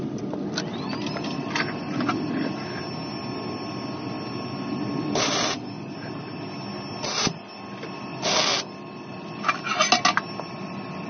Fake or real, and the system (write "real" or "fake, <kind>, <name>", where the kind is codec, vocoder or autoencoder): real